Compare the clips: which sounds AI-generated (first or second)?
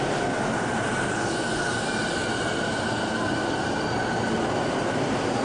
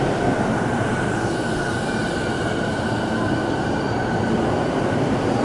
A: second